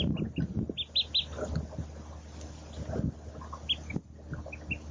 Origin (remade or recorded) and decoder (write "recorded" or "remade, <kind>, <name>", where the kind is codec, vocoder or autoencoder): recorded